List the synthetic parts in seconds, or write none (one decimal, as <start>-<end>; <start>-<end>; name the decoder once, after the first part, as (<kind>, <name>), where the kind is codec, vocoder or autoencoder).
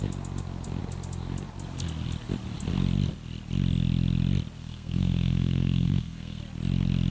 4.6-6.4 (codec, SNAC)